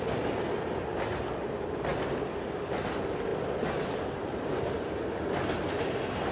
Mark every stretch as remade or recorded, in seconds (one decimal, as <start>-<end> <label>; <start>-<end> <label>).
0.0-6.3 recorded